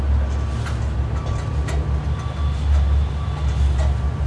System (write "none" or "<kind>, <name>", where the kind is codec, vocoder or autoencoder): none